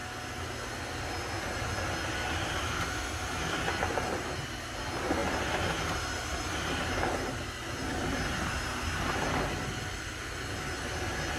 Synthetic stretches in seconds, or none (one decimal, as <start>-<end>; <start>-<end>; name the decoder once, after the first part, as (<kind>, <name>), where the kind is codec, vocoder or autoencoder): none